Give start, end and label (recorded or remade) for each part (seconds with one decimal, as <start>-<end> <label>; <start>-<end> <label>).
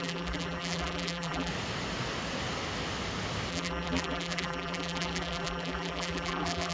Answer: 0.0-1.5 remade; 1.5-3.5 recorded; 3.5-6.7 remade